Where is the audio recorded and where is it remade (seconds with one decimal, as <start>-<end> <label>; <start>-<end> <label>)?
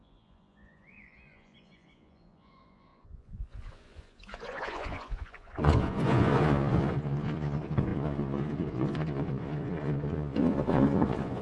0.0-11.4 remade